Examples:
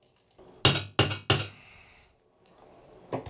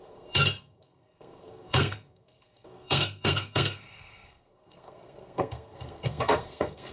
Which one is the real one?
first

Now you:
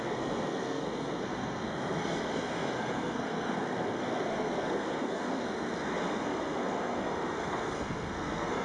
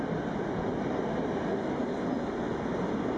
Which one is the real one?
second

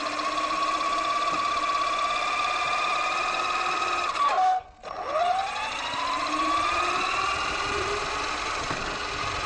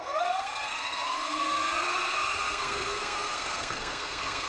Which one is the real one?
first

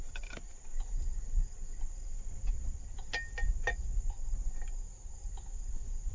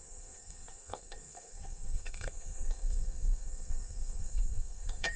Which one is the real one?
first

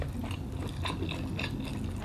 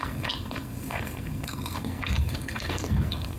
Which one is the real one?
first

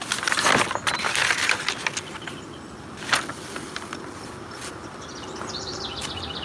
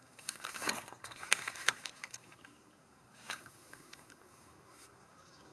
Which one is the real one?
first